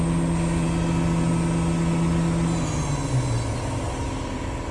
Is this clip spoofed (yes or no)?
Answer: no